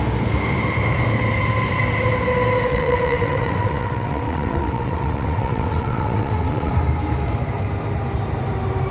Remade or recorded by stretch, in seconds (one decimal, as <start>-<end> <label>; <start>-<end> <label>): 0.0-2.7 recorded; 2.7-6.7 remade; 6.7-8.9 recorded